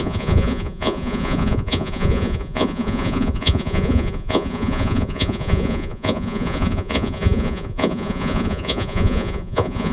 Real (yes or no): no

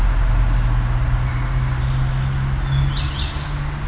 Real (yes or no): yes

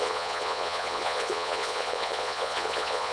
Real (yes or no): no